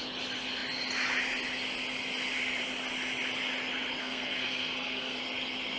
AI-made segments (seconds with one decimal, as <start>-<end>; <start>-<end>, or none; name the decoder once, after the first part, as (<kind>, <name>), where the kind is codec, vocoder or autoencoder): 4.0-5.2 (codec, SNAC)